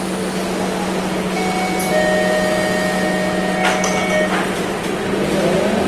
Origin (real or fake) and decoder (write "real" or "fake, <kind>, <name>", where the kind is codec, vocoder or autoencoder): real